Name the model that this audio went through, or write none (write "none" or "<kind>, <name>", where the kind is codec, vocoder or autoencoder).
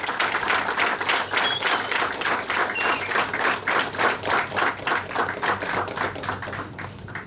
none